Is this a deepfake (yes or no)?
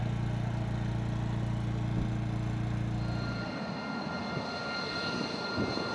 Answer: no